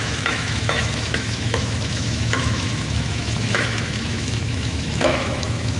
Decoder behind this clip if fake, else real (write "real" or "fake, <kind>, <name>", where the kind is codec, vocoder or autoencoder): fake, autoencoder, DAC-VAE